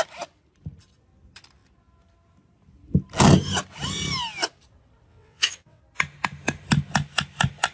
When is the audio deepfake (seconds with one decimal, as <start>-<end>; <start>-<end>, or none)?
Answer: 5.1-5.8